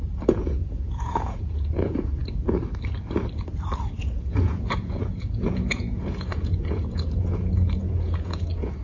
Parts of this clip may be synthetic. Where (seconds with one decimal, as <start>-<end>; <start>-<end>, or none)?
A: 0.0-2.2; 4.0-8.8